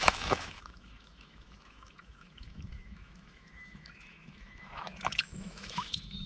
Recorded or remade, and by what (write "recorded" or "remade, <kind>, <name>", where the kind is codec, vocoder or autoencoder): remade, autoencoder, DAC-VAE